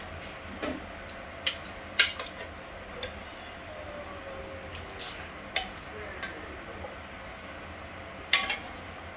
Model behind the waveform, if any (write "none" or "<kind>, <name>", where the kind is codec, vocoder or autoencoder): none